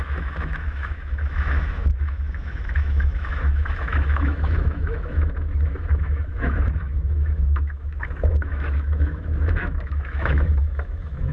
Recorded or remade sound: remade